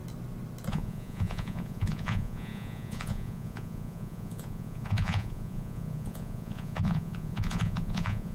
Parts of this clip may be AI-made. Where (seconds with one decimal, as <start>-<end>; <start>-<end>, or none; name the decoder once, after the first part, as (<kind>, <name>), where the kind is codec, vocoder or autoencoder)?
0.7-8.3 (vocoder, Vocos)